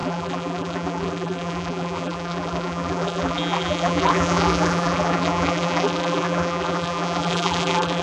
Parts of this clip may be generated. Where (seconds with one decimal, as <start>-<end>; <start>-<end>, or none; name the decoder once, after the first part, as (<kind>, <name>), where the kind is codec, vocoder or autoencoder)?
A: 0.0-8.0 (vocoder, BigVGAN v2)